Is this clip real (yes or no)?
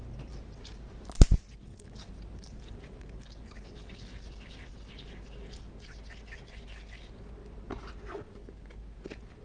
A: yes